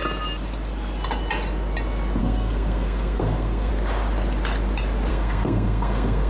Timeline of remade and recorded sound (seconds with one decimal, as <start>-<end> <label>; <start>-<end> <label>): 0.0-2.2 recorded; 2.2-3.7 remade; 3.7-5.1 recorded; 5.1-6.3 remade